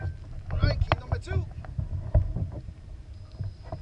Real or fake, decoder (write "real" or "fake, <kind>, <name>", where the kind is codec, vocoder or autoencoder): real